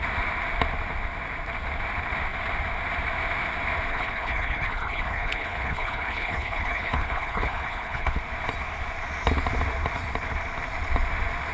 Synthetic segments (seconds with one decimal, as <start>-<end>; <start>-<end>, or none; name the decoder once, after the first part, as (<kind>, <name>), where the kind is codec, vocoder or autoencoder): 3.9-8.2 (codec, HILCodec)